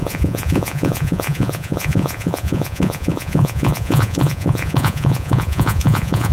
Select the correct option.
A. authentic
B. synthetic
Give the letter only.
B